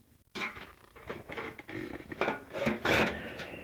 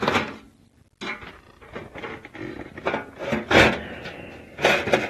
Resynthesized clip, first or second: first